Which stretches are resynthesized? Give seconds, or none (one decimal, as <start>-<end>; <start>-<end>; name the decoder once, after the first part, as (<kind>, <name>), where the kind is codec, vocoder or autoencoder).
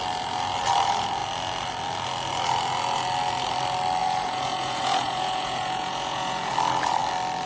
4.0-6.5 (vocoder, Vocos)